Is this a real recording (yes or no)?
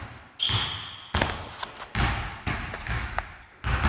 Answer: yes